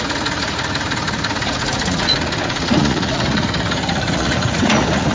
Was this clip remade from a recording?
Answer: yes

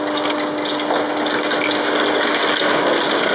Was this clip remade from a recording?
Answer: no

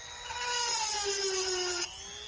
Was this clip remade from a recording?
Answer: no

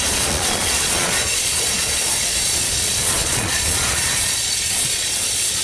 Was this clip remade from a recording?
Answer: yes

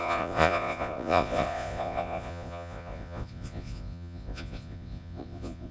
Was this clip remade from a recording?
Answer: yes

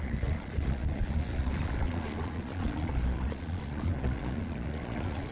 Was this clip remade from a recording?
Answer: yes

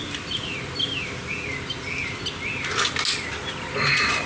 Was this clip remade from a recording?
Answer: no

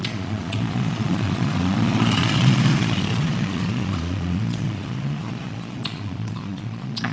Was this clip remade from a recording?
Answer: yes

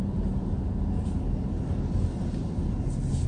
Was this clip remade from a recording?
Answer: no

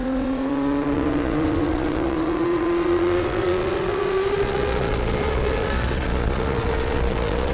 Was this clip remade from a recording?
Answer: yes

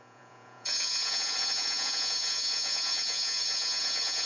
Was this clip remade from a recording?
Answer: yes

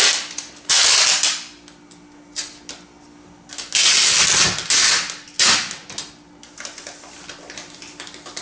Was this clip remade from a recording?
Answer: no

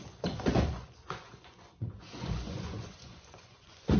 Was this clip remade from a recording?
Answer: yes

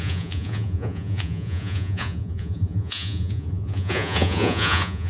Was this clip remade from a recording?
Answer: yes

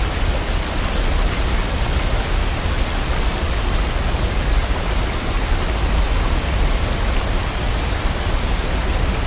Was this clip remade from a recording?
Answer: no